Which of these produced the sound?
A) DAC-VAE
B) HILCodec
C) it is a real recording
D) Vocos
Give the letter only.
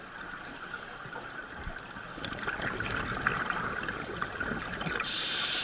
C